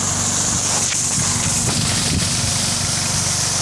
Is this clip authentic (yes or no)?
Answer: yes